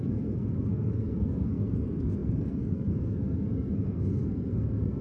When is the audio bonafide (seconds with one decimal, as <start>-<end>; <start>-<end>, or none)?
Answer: none